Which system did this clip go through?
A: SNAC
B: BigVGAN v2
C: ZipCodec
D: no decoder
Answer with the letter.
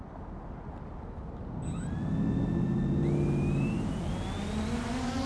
D